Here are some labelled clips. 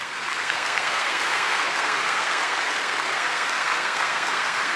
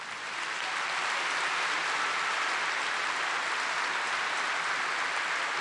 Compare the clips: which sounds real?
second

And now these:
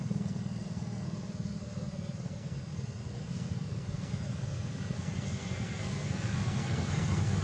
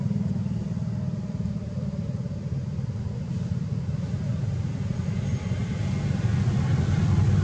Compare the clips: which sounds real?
second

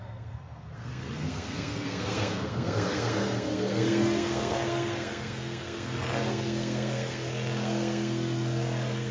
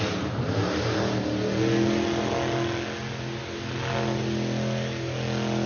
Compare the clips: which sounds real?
second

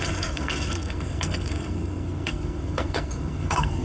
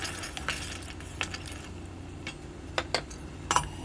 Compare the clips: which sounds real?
second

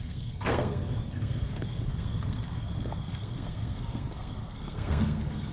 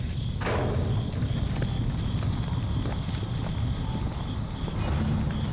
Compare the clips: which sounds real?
second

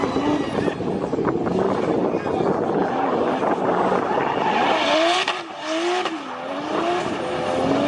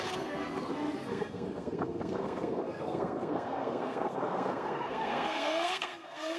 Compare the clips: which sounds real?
first